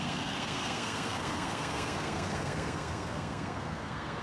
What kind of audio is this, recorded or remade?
remade